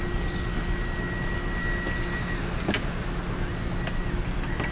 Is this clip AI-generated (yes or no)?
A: no